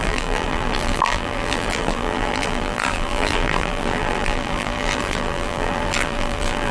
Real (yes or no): no